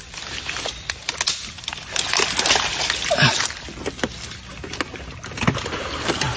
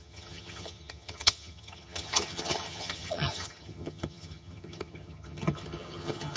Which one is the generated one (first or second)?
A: second